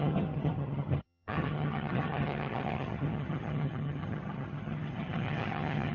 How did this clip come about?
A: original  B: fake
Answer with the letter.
B